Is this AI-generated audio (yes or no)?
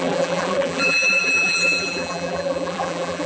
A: yes